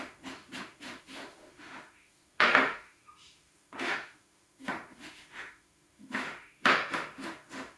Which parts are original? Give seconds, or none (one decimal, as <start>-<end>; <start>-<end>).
none